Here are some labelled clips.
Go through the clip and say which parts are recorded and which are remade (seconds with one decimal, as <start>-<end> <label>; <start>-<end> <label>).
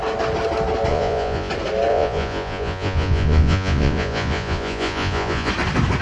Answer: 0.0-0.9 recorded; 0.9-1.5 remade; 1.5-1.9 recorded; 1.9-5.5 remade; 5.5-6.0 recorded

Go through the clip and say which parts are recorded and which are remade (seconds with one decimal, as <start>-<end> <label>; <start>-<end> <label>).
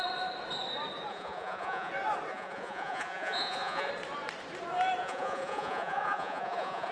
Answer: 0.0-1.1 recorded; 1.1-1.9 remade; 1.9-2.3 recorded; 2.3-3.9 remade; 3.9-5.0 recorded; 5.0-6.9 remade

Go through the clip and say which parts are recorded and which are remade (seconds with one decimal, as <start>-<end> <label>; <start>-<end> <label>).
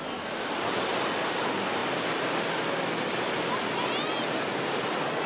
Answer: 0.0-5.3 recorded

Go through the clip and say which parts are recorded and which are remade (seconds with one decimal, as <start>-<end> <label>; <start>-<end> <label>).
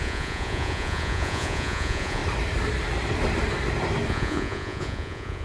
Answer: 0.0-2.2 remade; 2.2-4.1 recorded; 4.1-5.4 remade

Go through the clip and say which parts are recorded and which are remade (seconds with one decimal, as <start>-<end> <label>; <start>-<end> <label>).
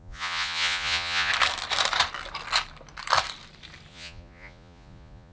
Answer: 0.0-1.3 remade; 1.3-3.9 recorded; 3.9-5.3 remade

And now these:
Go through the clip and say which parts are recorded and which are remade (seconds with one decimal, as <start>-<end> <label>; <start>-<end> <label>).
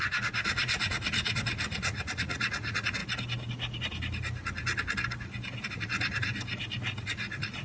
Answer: 0.0-3.0 remade; 3.0-5.6 recorded; 5.6-6.3 remade; 6.3-7.0 recorded; 7.0-7.6 remade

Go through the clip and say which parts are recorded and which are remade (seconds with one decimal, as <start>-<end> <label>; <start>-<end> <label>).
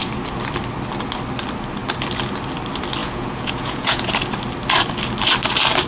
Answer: 0.0-3.0 recorded; 3.0-4.1 remade; 4.1-5.9 recorded